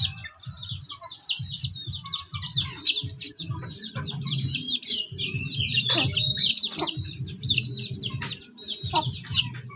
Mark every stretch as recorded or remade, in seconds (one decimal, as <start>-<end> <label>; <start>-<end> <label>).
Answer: 0.0-9.8 recorded